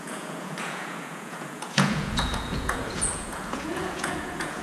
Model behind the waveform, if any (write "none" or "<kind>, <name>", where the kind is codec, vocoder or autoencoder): vocoder, Vocos